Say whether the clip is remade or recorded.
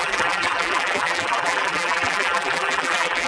remade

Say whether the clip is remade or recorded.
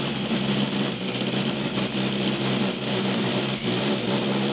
recorded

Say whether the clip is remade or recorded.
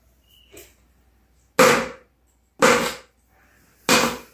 recorded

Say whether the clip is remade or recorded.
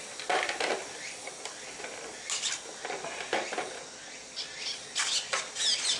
recorded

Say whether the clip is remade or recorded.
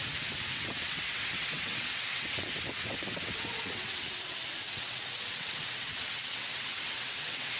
remade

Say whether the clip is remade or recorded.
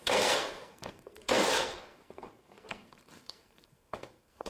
remade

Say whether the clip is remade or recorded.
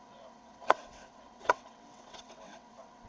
remade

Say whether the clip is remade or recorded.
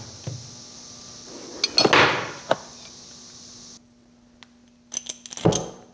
recorded